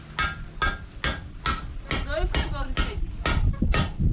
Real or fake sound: real